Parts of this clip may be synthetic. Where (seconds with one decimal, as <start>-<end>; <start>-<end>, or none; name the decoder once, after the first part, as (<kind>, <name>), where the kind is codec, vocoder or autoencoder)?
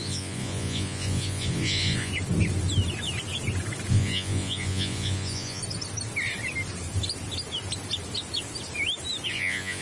0.0-2.1 (vocoder, Vocos); 3.9-5.6; 9.3-9.8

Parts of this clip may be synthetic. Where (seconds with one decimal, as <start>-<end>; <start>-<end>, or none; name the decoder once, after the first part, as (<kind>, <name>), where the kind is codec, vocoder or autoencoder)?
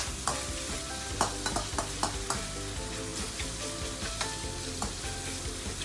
none